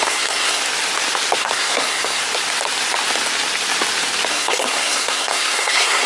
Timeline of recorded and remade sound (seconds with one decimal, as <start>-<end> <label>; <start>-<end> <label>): 0.0-0.6 remade; 0.6-1.4 recorded; 1.4-2.2 remade; 2.2-4.3 recorded; 4.3-6.1 remade